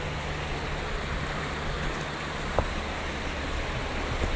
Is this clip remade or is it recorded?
recorded